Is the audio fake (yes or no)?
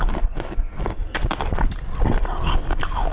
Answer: no